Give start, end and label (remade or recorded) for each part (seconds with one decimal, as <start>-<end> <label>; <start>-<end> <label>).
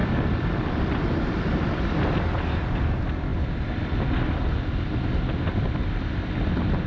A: 0.0-1.3 remade; 1.3-3.3 recorded; 3.3-4.5 remade; 4.5-6.9 recorded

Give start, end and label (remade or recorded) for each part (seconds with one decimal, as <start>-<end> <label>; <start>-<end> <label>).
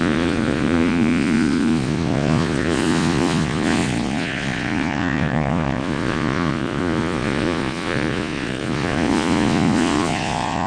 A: 0.0-10.7 remade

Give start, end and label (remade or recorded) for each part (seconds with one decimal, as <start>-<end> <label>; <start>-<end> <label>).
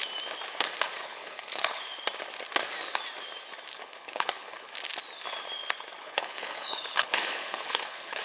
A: 0.0-1.0 recorded; 1.0-1.8 remade; 1.8-3.7 recorded; 3.7-4.7 remade; 4.7-6.0 recorded; 6.0-8.2 remade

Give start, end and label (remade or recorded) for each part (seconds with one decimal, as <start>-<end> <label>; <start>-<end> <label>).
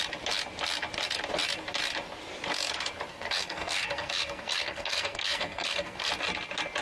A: 0.0-3.1 recorded; 3.1-6.1 remade; 6.1-6.8 recorded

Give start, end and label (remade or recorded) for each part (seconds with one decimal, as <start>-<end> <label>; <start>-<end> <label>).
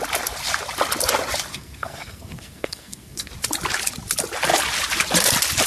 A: 0.0-1.5 recorded; 1.5-3.3 remade; 3.3-5.7 recorded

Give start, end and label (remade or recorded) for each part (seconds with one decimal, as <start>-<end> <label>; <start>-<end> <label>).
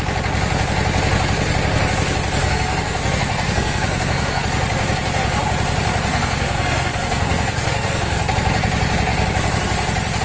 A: 0.0-2.4 recorded; 2.4-4.4 remade; 4.4-6.1 recorded; 6.1-8.3 remade; 8.3-10.2 recorded